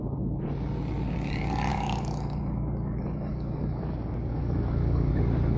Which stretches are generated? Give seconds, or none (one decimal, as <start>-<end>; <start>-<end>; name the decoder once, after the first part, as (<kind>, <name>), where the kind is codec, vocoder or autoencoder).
1.7-5.1 (codec, DAC)